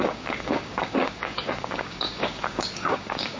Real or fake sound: fake